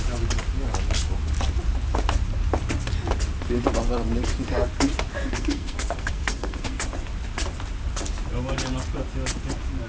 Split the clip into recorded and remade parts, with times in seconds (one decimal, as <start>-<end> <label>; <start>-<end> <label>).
0.0-5.2 recorded; 5.2-6.8 remade; 6.8-9.9 recorded